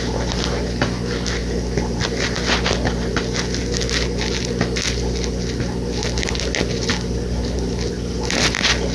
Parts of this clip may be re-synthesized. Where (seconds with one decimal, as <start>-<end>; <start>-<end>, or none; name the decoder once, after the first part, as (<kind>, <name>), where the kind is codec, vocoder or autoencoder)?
none